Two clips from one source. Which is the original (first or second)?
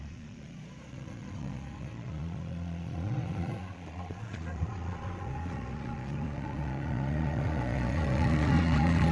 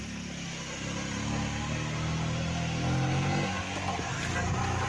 second